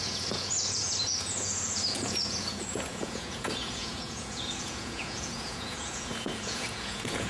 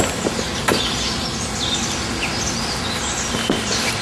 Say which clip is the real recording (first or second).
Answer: second